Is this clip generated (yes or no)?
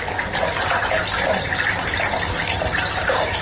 no